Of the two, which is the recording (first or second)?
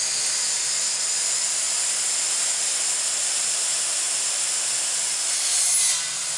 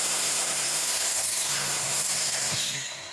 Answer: first